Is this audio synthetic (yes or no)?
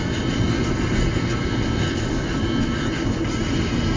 no